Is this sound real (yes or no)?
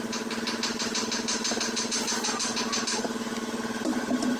no